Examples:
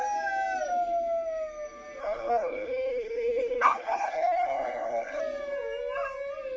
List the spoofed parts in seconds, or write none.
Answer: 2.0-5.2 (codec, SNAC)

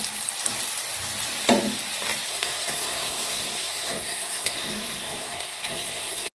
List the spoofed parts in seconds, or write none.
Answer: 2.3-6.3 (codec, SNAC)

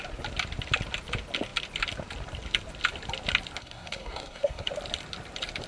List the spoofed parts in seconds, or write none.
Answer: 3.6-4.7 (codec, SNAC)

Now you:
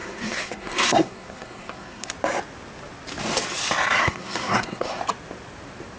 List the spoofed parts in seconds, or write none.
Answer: 0.0-2.1 (codec, SNAC); 4.0-5.0